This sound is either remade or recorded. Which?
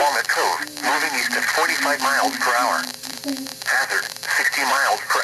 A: recorded